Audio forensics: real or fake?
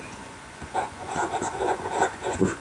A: fake